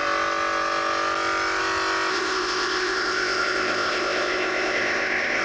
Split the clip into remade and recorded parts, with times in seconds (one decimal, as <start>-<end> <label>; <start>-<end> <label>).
0.0-2.1 recorded; 2.1-5.4 remade